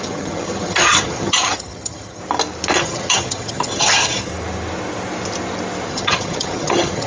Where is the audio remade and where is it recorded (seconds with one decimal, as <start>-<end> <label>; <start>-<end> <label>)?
0.0-2.2 remade; 2.2-2.8 recorded; 2.8-4.3 remade; 4.3-5.9 recorded; 5.9-7.1 remade